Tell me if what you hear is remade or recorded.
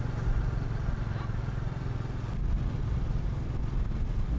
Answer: recorded